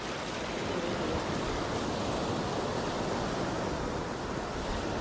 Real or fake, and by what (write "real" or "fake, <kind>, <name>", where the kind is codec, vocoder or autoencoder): real